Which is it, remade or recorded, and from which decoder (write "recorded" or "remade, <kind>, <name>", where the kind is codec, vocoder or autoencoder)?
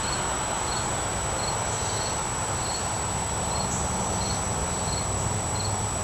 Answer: recorded